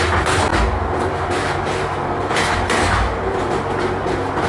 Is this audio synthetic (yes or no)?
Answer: no